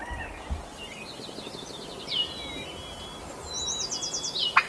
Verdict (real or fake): real